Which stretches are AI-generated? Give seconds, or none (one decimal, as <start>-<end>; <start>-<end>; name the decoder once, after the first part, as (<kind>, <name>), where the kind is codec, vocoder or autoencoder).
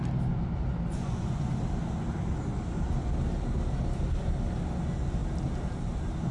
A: 0.9-1.5 (vocoder, Vocos)